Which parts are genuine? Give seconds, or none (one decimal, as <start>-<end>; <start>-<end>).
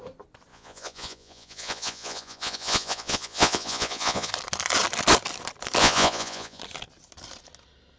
0.0-0.5; 4.3-5.8; 6.6-8.0